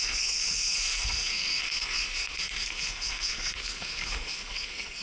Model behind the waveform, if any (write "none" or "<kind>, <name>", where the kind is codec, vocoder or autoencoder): codec, SNAC